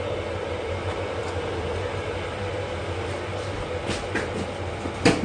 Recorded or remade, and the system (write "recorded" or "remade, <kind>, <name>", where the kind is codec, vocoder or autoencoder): recorded